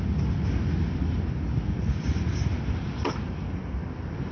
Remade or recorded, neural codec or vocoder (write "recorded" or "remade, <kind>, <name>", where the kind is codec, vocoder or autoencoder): recorded